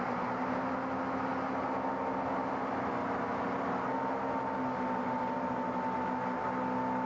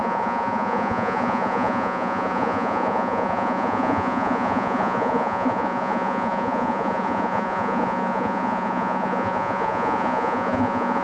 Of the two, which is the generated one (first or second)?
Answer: second